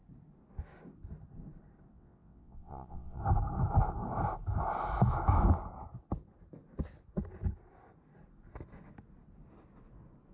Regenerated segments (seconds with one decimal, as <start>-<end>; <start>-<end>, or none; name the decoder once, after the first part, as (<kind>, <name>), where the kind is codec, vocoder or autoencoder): 1.9-3.2 (vocoder, WaveNeXt)